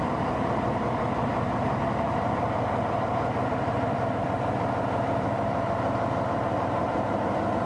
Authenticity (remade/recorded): remade